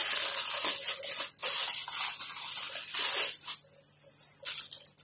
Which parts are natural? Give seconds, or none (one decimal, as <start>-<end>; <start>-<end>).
0.0-5.0